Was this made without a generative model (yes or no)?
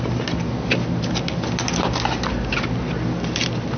yes